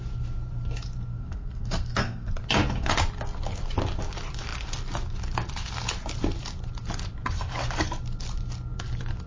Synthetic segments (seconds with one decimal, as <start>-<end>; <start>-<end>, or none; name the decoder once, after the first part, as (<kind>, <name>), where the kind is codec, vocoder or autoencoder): 1.1-2.3 (codec, SNAC)